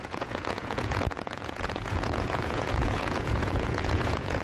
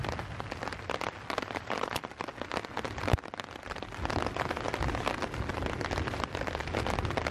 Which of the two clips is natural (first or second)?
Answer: second